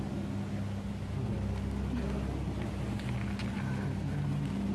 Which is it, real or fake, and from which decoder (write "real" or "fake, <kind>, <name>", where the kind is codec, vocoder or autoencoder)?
real